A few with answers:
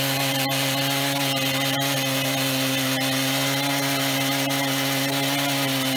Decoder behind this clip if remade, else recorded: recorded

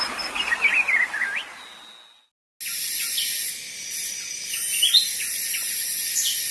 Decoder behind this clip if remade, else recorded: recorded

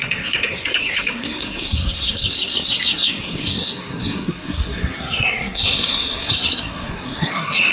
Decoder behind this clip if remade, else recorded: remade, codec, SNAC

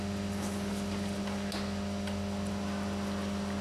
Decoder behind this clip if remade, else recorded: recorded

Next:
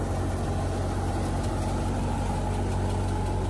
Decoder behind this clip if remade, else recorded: recorded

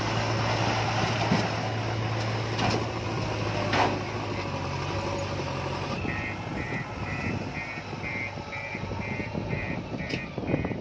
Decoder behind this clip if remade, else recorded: recorded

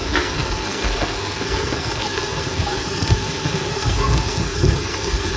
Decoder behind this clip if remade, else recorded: remade, codec, SNAC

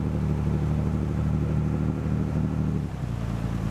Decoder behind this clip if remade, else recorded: recorded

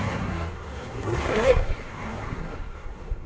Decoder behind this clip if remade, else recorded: remade, codec, SNAC